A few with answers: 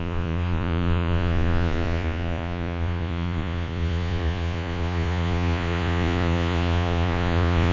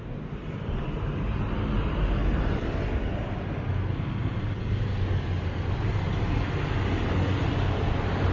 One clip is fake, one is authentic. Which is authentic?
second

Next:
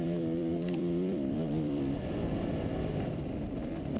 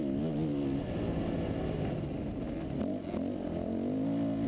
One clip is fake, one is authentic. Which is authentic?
second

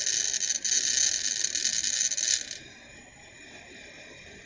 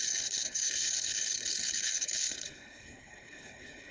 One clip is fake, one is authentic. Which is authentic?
first